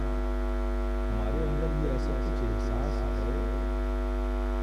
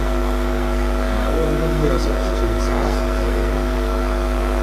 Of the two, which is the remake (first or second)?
second